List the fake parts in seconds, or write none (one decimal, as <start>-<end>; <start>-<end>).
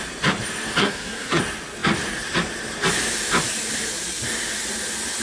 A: 0.8-1.4